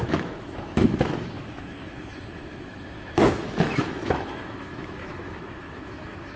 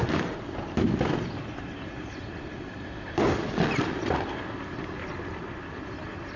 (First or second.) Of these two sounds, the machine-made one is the first